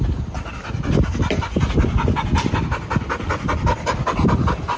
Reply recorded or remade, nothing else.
recorded